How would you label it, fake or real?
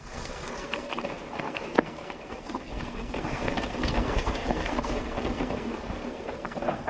fake